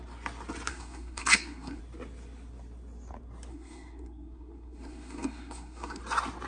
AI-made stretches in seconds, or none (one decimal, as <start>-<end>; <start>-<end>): 0.7-1.8; 3.5-6.0

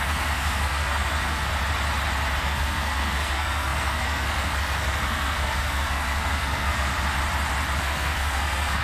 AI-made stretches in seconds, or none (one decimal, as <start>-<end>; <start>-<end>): 0.0-1.5; 2.4-6.9; 7.8-8.8

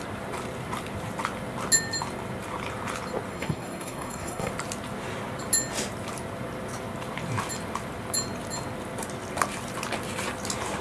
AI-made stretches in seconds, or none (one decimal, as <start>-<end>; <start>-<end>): 3.3-4.5